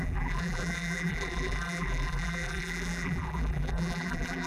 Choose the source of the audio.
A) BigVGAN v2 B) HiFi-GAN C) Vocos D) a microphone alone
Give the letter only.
A